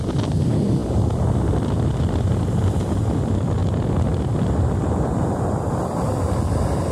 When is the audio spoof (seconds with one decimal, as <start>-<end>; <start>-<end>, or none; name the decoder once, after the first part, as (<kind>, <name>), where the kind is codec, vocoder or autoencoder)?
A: 0.0-0.8 (vocoder, BigVGAN v2); 2.0-3.6; 4.4-6.9

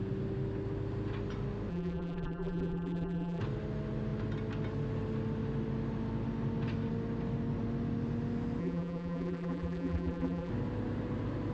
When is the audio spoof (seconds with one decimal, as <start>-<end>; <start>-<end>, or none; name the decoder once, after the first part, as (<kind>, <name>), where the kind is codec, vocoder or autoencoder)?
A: 1.7-3.4 (vocoder, BigVGAN v2); 8.6-10.5

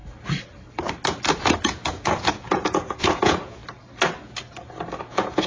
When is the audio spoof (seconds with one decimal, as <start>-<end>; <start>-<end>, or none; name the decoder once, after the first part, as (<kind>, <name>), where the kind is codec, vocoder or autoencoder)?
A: 1.6-3.6 (vocoder, Vocos); 5.0-5.5

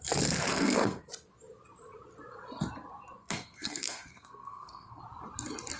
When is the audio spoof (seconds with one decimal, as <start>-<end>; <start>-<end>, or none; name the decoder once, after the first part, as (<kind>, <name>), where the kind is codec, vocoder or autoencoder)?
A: 0.5-1.1 (codec, SNAC); 3.2-5.0